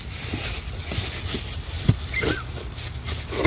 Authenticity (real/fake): real